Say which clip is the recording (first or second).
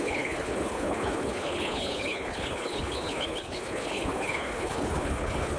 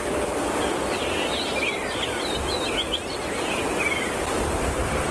second